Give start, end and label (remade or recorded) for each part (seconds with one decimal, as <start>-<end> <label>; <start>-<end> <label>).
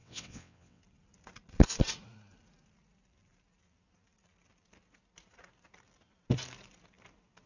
0.0-0.8 remade; 0.8-7.5 recorded